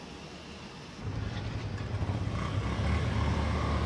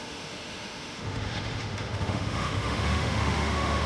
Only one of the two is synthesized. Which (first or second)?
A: second